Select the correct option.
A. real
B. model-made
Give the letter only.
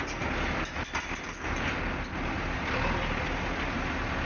A